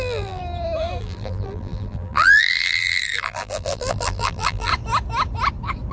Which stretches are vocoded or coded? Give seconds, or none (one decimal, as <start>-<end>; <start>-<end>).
0.0-0.4; 1.0-4.7